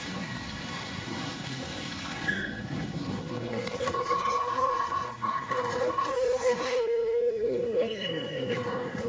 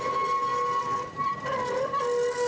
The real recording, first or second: second